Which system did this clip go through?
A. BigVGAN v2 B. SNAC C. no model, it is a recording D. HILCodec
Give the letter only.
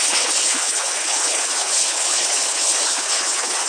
D